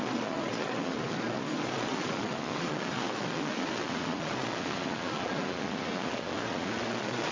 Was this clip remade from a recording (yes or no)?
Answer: yes